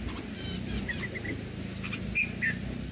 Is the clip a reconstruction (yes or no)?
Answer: no